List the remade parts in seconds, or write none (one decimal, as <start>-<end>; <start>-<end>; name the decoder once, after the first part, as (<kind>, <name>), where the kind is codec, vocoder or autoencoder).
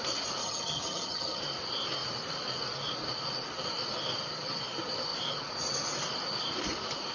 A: 0.4-1.4 (vocoder, HiFi-GAN)